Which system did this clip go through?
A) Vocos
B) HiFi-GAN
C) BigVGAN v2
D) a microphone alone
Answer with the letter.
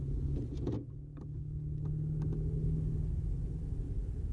D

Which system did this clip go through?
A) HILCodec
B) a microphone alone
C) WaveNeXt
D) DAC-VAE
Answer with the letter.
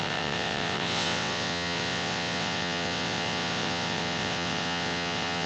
C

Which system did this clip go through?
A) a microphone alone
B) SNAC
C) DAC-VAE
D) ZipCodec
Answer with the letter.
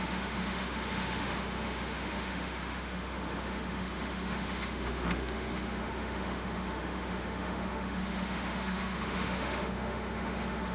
C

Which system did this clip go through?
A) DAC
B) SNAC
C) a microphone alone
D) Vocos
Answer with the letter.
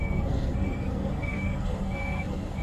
B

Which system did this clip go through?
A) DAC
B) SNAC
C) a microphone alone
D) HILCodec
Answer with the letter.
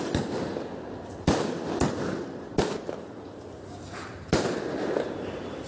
C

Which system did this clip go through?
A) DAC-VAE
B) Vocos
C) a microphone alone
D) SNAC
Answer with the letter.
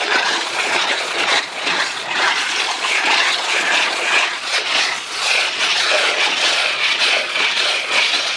B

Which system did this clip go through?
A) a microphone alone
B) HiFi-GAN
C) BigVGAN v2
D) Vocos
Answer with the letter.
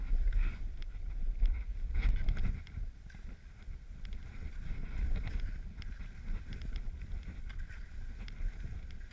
A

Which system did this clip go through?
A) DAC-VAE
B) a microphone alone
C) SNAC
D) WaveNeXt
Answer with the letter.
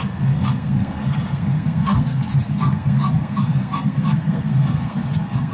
C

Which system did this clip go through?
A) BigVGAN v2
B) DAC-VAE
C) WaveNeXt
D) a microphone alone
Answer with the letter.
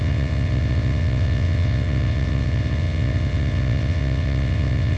C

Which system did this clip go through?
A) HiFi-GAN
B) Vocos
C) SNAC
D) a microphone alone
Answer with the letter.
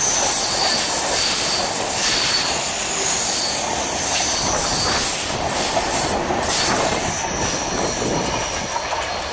D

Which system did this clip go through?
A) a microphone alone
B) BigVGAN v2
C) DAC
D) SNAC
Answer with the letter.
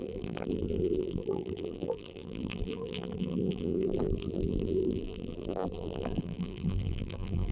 B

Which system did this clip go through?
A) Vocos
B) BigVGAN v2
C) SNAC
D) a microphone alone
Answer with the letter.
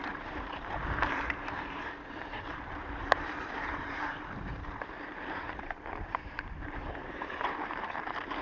B